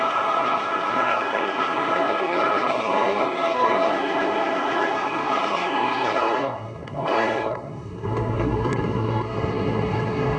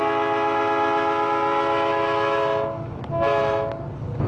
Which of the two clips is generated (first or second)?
first